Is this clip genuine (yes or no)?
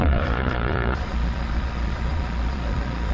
no